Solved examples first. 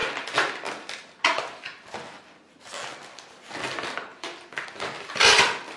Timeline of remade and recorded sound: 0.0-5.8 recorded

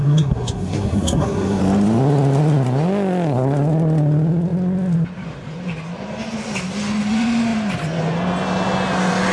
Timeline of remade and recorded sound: 0.0-1.6 remade; 1.6-9.3 recorded